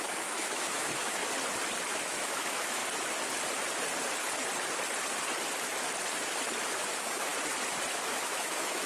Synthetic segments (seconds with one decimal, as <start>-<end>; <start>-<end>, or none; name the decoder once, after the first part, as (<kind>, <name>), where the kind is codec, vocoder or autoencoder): 0.0-1.2 (autoencoder, DAC-VAE); 1.9-2.8; 6.6-7.3; 7.9-8.9